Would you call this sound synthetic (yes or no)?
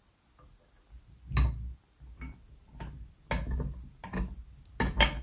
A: no